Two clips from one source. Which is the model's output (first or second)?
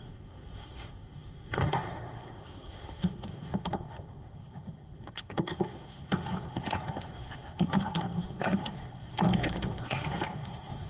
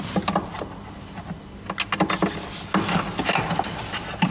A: first